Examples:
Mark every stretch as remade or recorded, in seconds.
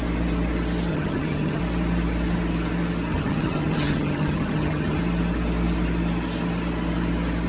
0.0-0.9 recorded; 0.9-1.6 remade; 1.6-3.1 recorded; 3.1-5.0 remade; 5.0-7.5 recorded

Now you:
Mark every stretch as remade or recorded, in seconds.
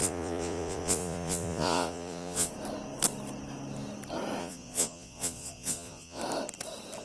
0.0-2.5 remade; 2.5-4.4 recorded; 4.4-6.2 remade; 6.2-7.0 recorded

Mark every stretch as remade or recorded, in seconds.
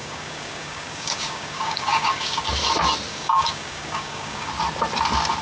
0.0-2.4 remade; 2.4-3.1 recorded; 3.1-4.5 remade; 4.5-5.4 recorded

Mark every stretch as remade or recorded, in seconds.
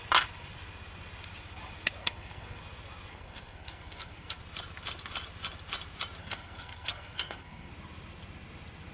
0.0-2.0 recorded; 2.0-2.6 remade; 2.6-3.1 recorded; 3.1-4.4 remade; 4.4-6.2 recorded; 6.2-7.7 remade; 7.7-8.9 recorded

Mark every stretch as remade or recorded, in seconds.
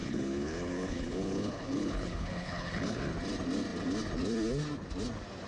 0.0-3.0 remade; 3.0-5.5 recorded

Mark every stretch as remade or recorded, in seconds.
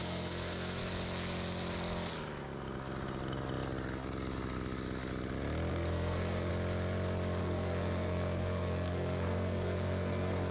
0.0-0.8 remade; 0.8-5.7 recorded; 5.7-6.5 remade; 6.5-7.4 recorded; 7.4-10.5 remade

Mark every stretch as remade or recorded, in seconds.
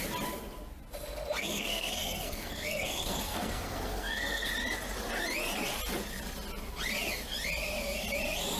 0.0-1.4 recorded; 1.4-4.5 remade; 4.5-8.6 recorded